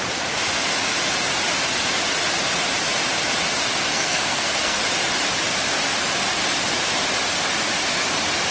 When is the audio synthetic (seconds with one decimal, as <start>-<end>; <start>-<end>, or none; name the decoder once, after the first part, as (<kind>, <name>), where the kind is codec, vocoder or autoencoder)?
3.9-4.8 (codec, SNAC)